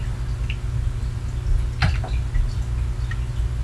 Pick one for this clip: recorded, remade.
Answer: recorded